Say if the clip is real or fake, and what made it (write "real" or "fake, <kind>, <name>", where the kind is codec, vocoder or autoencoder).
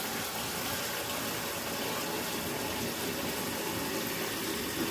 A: real